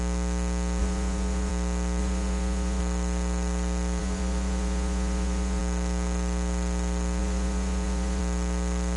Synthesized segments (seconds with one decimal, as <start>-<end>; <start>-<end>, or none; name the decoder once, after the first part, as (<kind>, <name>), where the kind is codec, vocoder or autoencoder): 0.8-1.5 (vocoder, Vocos); 2.0-2.8; 4.0-5.6; 7.2-8.2